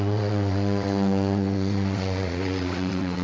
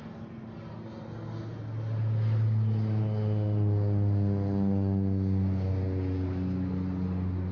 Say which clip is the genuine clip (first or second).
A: second